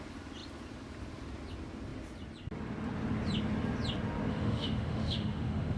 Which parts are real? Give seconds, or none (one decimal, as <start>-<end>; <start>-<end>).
0.0-4.3